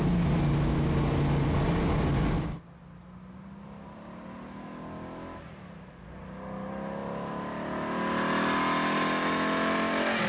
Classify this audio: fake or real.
real